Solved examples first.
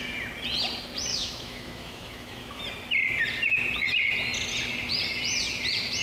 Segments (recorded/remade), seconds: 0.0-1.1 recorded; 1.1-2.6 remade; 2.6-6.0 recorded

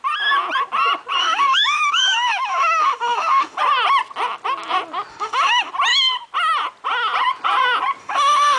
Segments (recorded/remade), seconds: 0.0-1.2 recorded; 1.2-3.6 remade; 3.6-5.1 recorded; 5.1-5.7 remade; 5.7-8.0 recorded; 8.0-8.6 remade

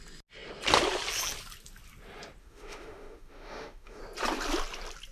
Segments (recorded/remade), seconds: 0.0-2.4 recorded; 2.4-4.0 remade; 4.0-5.1 recorded

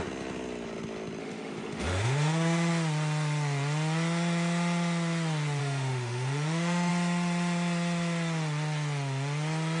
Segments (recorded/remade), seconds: 0.0-1.2 recorded; 1.2-2.7 remade; 2.7-5.6 recorded; 5.6-6.9 remade; 6.9-9.8 recorded

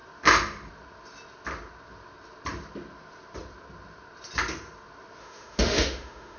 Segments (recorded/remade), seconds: 0.0-5.2 recorded; 5.2-6.4 remade